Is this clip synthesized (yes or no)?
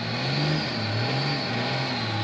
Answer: no